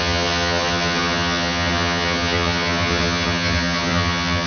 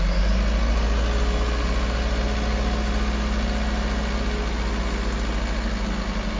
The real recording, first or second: second